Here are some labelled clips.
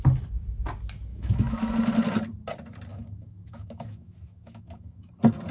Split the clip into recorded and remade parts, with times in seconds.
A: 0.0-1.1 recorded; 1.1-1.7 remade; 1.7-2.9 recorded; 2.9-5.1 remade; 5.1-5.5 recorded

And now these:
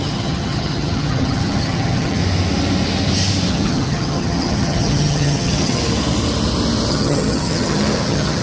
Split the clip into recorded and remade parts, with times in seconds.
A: 0.0-2.2 remade; 2.2-3.5 recorded; 3.5-5.8 remade; 5.8-6.9 recorded; 6.9-8.4 remade

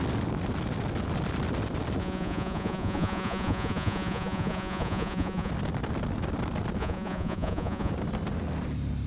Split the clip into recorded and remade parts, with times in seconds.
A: 0.0-2.0 recorded; 2.0-5.5 remade; 5.5-6.8 recorded; 6.8-7.9 remade; 7.9-9.1 recorded

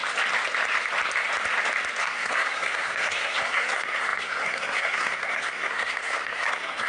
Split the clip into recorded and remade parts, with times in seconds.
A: 0.0-2.0 recorded; 2.0-6.9 remade

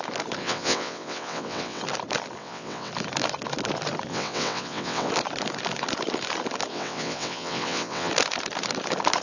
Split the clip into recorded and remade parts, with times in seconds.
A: 0.0-0.4 recorded; 0.4-1.8 remade; 1.8-2.4 recorded; 2.4-2.9 remade; 2.9-4.1 recorded; 4.1-5.1 remade; 5.1-6.7 recorded; 6.7-8.1 remade; 8.1-9.2 recorded

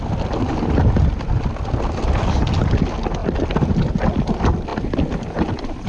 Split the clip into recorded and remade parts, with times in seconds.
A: 0.0-5.9 recorded

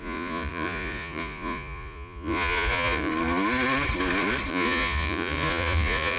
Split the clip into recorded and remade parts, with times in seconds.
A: 0.0-3.1 remade; 3.1-4.5 recorded; 4.5-6.2 remade

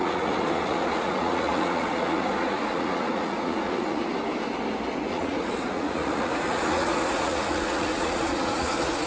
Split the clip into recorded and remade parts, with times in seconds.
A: 0.0-4.0 remade; 4.0-5.1 recorded; 5.1-9.1 remade